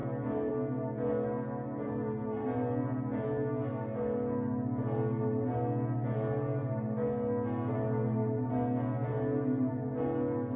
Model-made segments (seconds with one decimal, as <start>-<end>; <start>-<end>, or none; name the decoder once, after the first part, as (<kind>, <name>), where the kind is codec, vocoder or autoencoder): none